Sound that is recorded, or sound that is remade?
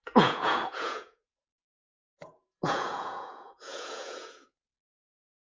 remade